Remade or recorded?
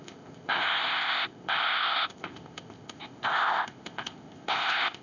remade